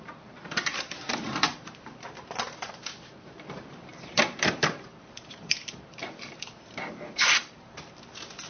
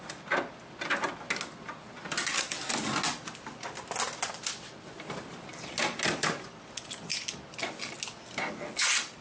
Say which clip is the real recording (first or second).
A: second